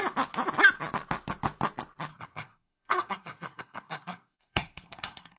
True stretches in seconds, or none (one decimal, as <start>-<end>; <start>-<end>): 0.0-2.1